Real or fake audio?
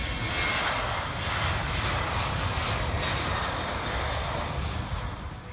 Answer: real